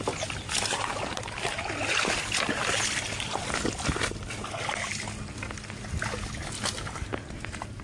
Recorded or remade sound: recorded